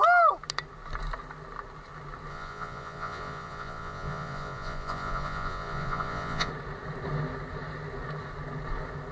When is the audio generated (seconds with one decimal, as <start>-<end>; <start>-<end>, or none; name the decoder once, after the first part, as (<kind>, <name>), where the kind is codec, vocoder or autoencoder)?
2.3-6.5 (vocoder, Vocos)